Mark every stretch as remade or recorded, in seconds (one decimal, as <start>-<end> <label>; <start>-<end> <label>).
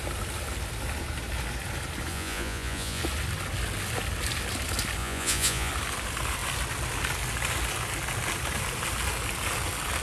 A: 0.0-2.1 recorded; 2.1-3.0 remade; 3.0-5.0 recorded; 5.0-5.7 remade; 5.7-10.0 recorded